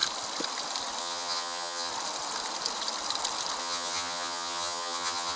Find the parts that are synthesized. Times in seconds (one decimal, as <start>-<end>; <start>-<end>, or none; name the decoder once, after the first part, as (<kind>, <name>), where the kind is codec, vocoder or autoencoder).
1.0-1.9 (vocoder, HiFi-GAN); 3.6-5.4